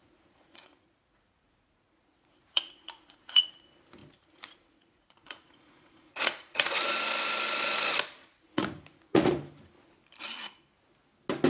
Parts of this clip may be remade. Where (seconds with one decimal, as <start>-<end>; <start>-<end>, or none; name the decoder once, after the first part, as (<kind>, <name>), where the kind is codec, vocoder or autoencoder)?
0.0-3.6 (vocoder, Vocos); 4.0-6.7; 8.2-9.3